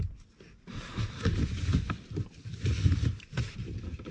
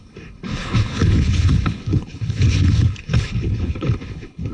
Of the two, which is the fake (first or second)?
second